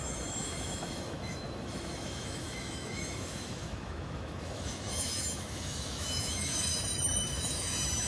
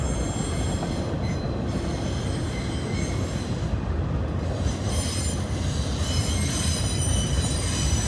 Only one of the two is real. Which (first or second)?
second